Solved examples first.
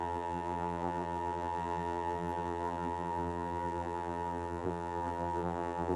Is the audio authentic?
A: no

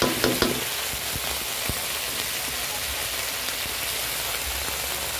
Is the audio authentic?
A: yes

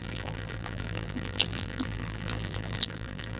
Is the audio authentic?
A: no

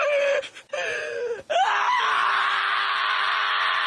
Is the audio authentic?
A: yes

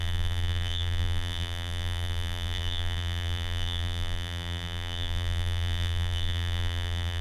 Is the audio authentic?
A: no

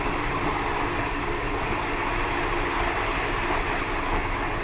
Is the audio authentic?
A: yes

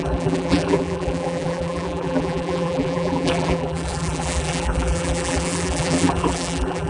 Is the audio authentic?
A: no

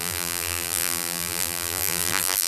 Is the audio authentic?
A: no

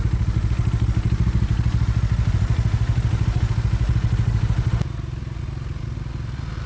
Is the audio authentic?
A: yes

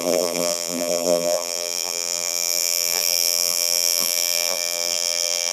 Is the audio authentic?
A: no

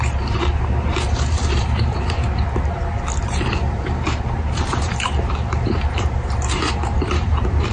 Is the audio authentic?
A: no